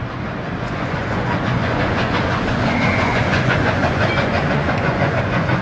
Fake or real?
fake